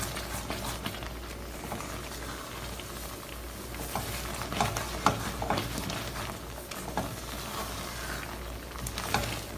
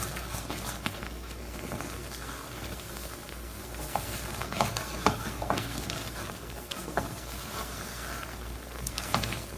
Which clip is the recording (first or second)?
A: first